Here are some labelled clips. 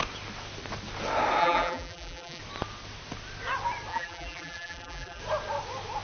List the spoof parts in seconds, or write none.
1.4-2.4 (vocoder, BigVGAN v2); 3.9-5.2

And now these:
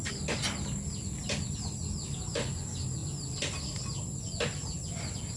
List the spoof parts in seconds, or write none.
none

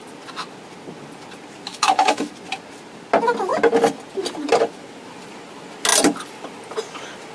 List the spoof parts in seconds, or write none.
1.7-2.3 (autoencoder, DAC-VAE)

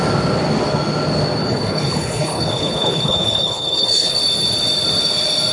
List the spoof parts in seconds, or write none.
1.4-4.2 (codec, HILCodec)

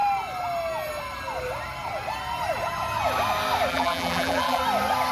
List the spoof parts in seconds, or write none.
3.7-4.6 (vocoder, BigVGAN v2)

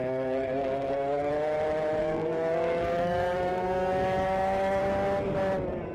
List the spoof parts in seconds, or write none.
0.0-1.3 (codec, SNAC); 2.0-4.8

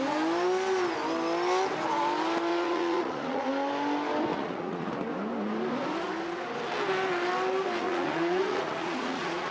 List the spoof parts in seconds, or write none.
2.5-3.5 (vocoder, Vocos); 4.3-4.9; 7.8-9.5

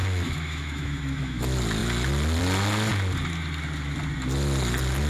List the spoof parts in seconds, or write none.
0.0-1.4 (autoencoder, DAC-VAE)